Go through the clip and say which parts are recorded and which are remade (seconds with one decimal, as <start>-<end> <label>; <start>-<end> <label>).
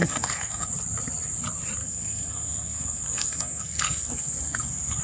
0.0-0.7 remade; 0.7-1.8 recorded; 1.8-5.0 remade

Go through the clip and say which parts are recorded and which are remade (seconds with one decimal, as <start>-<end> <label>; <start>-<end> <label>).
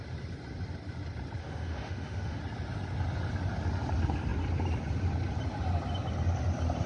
0.0-1.4 recorded; 1.4-2.4 remade; 2.4-6.9 recorded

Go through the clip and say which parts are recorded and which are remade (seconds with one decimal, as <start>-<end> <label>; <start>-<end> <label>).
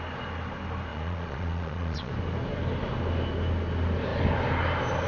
0.0-0.9 recorded; 0.9-2.1 remade; 2.1-5.1 recorded